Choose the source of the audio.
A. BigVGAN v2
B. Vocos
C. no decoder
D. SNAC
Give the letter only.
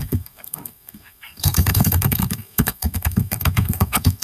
D